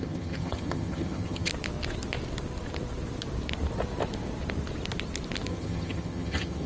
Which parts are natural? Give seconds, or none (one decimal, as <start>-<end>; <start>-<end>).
1.5-5.5